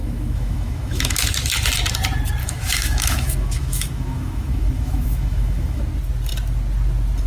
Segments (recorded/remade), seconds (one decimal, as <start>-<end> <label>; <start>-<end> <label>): 0.0-1.3 remade; 1.3-2.4 recorded; 2.4-5.8 remade; 5.8-7.3 recorded